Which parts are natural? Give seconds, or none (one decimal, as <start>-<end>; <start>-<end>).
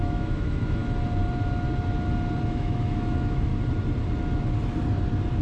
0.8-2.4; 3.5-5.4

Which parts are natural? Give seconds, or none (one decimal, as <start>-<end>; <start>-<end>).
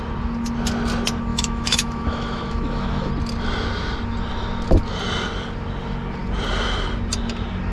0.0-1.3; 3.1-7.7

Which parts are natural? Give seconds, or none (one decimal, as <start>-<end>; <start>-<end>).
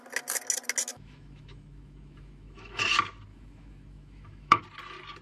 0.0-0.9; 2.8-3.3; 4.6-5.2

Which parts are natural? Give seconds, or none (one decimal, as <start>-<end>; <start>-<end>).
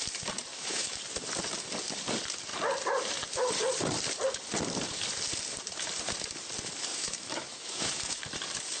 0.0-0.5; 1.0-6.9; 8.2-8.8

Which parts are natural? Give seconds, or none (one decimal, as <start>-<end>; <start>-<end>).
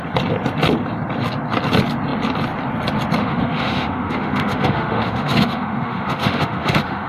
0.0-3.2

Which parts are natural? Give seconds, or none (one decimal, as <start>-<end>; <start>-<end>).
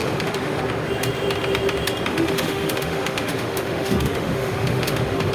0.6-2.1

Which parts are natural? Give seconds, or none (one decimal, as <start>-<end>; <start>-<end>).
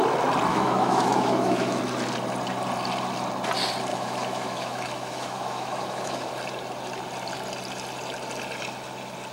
0.0-0.5; 1.8-3.9; 6.3-9.3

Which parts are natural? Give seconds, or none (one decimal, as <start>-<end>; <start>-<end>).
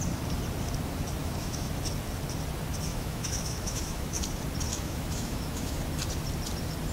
0.0-1.2; 1.7-2.9; 4.2-4.7; 5.8-6.9